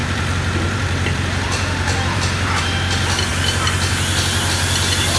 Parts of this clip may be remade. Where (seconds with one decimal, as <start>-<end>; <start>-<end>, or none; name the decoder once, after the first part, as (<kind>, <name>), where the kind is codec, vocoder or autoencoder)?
0.0-2.6 (vocoder, BigVGAN v2)